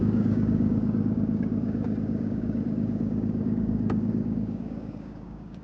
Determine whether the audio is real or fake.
fake